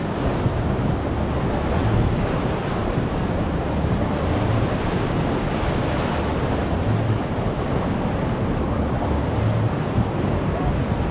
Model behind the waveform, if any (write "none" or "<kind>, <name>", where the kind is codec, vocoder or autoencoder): none